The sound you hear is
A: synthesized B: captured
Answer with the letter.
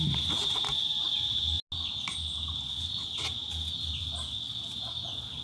B